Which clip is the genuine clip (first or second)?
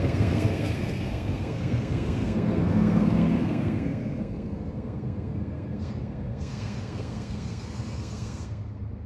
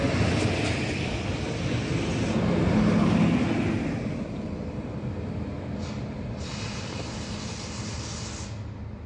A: second